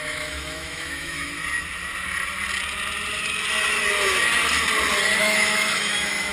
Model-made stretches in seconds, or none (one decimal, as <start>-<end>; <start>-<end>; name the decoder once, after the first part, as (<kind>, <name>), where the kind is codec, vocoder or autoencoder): 0.0-1.4 (autoencoder, DAC-VAE); 5.2-6.3